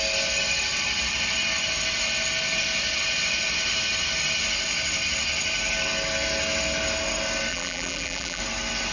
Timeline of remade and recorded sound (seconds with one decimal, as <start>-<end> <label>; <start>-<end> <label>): 0.0-7.5 recorded; 7.5-8.4 remade; 8.4-8.9 recorded